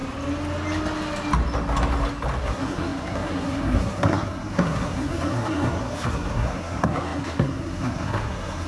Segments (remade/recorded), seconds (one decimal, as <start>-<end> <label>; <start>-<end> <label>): 0.0-2.4 recorded; 2.4-8.7 remade